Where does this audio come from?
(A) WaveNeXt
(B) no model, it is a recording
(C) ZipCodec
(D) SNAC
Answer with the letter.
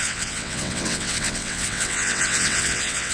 A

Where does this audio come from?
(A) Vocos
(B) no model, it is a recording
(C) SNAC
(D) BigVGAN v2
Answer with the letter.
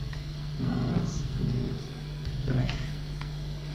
C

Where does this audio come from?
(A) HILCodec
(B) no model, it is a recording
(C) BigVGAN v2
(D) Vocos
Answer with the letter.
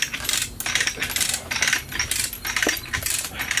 B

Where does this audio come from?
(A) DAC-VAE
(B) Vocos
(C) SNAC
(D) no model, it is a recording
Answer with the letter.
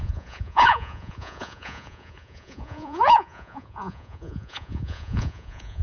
B